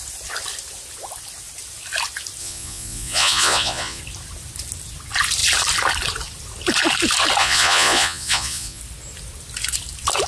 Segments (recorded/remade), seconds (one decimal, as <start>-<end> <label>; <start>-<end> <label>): 0.0-2.4 recorded; 2.4-4.0 remade; 4.0-7.4 recorded; 7.4-8.8 remade; 8.8-10.3 recorded